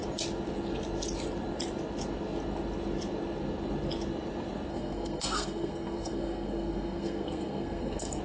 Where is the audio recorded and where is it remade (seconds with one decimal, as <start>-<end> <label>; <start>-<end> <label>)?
0.0-4.7 recorded; 4.7-8.2 remade